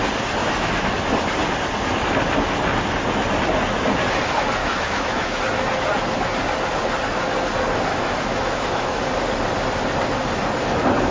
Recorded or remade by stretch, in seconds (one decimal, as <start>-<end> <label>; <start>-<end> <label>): 0.0-0.4 recorded; 0.4-0.9 remade; 0.9-4.6 recorded; 4.6-5.4 remade; 5.4-7.9 recorded; 7.9-9.0 remade; 9.0-11.1 recorded